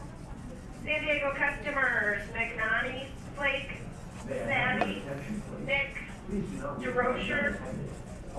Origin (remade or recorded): remade